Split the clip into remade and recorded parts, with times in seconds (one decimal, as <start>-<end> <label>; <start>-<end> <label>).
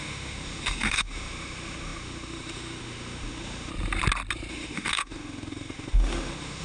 0.0-3.7 remade; 3.7-4.5 recorded; 4.5-6.6 remade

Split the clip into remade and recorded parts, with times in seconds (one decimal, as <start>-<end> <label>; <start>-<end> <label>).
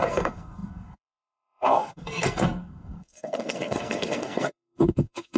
0.0-5.4 remade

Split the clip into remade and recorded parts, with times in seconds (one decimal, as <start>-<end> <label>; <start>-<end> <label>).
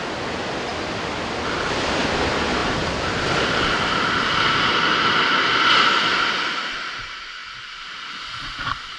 0.0-9.0 recorded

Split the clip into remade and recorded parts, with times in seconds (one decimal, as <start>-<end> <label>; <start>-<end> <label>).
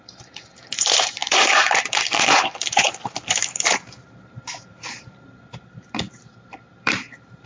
0.0-7.5 remade